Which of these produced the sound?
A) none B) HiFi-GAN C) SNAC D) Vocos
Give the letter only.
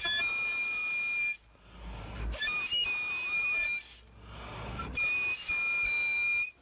A